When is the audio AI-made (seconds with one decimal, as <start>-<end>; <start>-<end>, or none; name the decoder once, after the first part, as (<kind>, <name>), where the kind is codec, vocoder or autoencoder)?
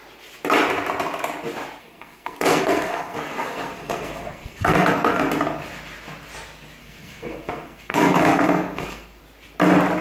1.8-5.3 (codec, SNAC); 6.8-9.2